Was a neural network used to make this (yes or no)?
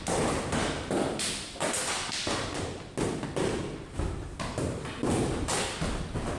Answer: no